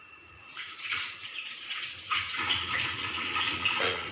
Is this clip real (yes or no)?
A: no